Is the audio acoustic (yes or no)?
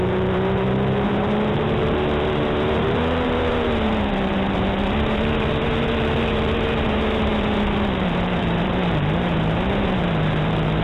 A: no